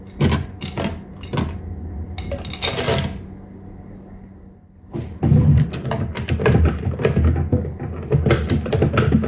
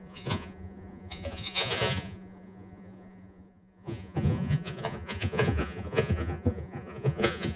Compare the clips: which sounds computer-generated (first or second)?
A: second